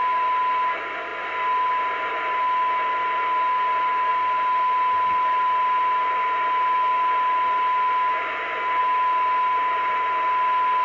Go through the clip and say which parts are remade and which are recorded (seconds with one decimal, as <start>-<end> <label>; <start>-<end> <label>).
0.0-10.8 recorded